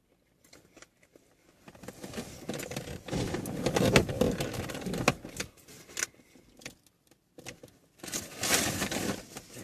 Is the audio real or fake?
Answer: real